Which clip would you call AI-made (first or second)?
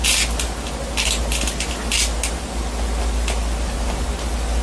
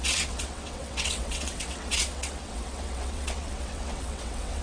second